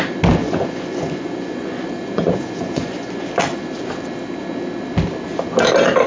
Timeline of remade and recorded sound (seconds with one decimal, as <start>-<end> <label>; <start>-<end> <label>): 0.0-0.4 recorded; 0.4-3.2 remade; 3.2-6.1 recorded